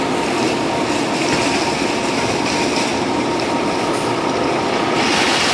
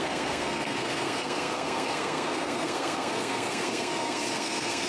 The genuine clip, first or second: first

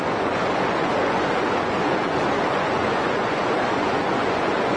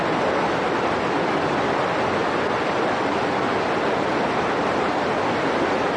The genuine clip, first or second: second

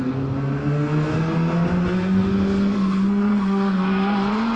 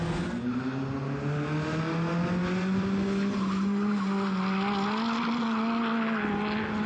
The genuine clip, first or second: second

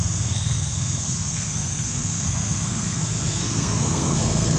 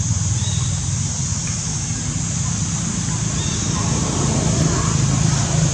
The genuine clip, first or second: second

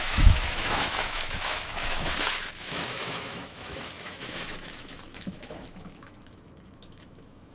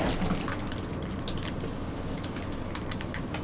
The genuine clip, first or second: second